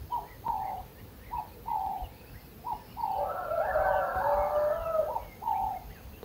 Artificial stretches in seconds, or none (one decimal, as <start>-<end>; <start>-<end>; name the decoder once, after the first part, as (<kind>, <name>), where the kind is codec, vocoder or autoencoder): none